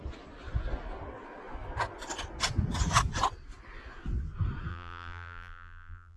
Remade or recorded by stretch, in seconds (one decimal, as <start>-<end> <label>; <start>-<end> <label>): 0.0-4.7 recorded; 4.7-6.2 remade